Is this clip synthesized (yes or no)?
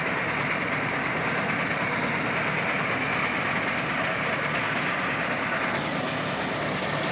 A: no